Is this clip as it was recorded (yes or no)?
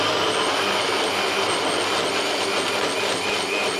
yes